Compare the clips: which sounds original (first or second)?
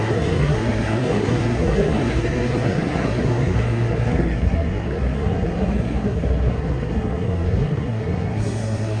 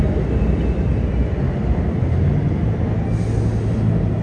second